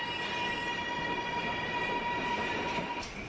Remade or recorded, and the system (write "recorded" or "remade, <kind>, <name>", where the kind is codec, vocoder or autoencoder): recorded